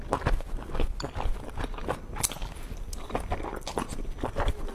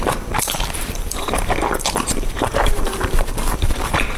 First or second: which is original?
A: first